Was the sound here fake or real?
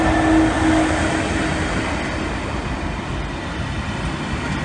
real